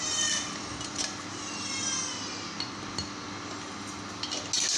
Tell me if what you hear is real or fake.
real